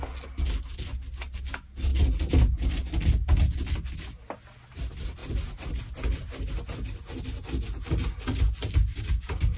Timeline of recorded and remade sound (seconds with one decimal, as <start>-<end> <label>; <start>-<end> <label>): 0.0-8.9 recorded; 8.9-9.6 remade